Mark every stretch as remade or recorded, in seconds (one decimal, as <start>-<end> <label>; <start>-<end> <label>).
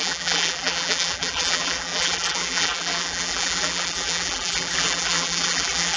0.0-6.0 remade